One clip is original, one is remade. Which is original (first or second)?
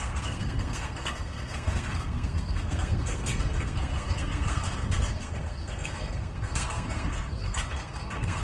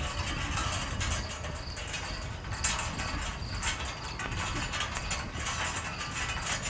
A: second